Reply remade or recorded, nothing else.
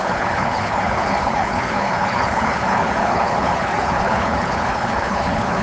remade